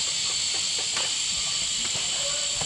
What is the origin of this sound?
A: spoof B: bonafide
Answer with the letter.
A